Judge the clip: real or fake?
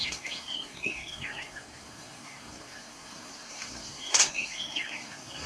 fake